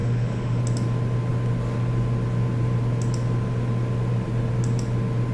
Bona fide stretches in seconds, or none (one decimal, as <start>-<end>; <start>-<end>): 0.6-5.3